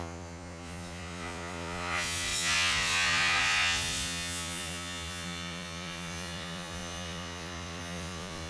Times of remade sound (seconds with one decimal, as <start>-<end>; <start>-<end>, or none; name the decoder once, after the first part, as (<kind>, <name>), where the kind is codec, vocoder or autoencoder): 0.0-8.5 (vocoder, Vocos)